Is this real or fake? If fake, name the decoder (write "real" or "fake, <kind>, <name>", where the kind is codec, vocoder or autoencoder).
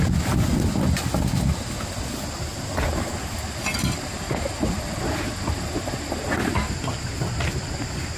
real